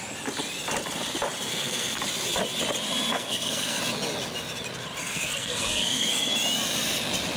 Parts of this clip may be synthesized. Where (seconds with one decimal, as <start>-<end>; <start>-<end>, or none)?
1.5-2.0; 3.1-3.8; 5.0-6.3